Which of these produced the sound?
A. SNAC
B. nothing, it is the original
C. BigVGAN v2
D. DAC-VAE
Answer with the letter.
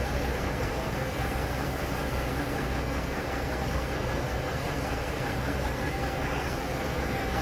A